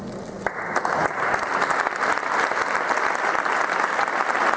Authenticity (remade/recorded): recorded